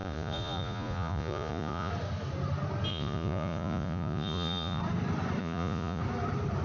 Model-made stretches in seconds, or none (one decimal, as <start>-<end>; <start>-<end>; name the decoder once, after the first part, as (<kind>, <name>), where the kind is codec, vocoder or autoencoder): 0.0-1.9 (vocoder, Vocos); 2.9-4.8; 5.4-6.0